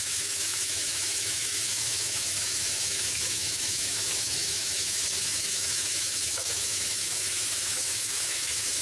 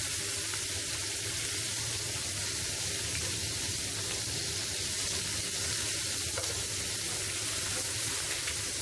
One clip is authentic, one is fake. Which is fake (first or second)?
first